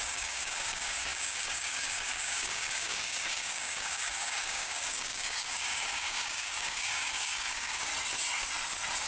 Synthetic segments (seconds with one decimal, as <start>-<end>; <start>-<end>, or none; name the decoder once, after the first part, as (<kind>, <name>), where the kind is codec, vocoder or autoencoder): 0.0-7.9 (codec, DAC)